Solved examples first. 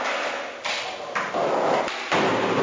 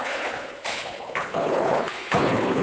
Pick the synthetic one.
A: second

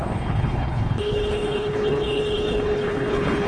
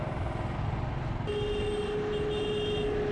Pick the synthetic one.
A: first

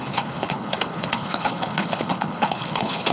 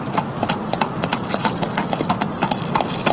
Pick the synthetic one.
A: first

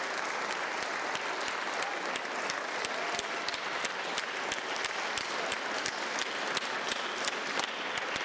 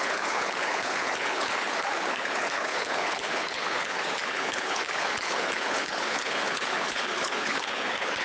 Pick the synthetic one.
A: second